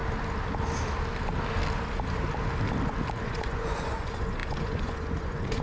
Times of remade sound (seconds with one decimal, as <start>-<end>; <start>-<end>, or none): 3.2-5.6